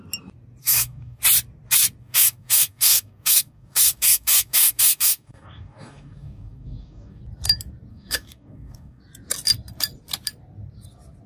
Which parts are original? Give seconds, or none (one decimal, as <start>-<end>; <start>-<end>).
0.0-0.6; 1.2-2.0; 7.2-7.9; 9.0-11.3